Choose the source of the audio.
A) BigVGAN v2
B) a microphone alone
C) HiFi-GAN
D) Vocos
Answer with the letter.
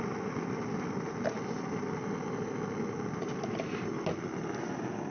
B